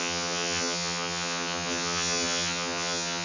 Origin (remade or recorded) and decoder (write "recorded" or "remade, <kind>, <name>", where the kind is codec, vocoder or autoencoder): remade, vocoder, HiFi-GAN